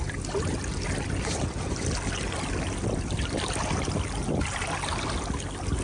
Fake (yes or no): no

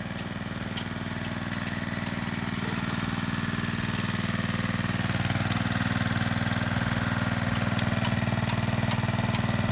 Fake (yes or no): no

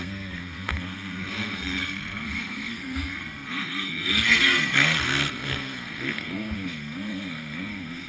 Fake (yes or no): yes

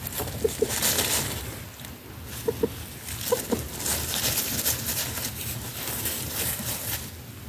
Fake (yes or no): no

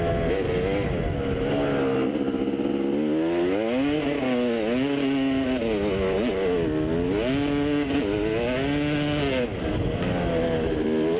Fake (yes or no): no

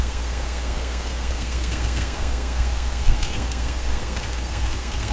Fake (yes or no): yes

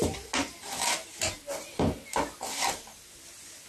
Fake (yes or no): no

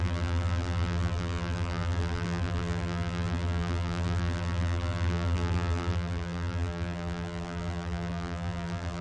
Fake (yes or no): yes